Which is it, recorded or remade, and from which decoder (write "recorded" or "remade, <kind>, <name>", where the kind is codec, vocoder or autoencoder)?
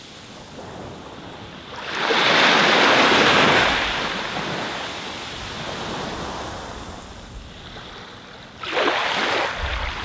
recorded